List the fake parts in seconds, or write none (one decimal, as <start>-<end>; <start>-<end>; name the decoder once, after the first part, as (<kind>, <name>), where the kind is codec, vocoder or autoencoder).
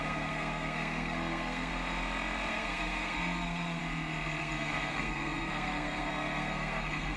0.0-1.7 (codec, SNAC); 2.5-3.8; 4.4-7.2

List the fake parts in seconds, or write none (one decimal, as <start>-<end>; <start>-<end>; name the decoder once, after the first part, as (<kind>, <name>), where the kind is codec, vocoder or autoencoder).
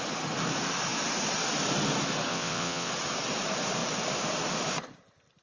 2.3-2.9 (vocoder, WaveNeXt)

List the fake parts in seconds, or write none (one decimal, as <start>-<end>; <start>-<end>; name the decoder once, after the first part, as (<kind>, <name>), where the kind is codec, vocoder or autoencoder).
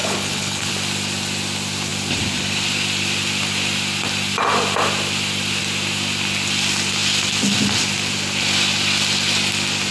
0.0-0.7 (codec, HILCodec)